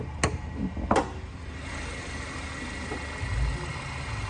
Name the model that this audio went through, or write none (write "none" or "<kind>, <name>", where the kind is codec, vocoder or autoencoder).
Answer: none